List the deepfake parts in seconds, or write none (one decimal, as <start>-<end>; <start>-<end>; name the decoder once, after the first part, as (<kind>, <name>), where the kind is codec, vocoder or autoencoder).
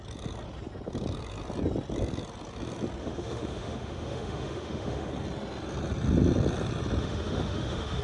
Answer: 3.0-5.1 (autoencoder, DAC-VAE); 7.0-8.0